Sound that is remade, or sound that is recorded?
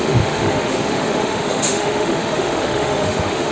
remade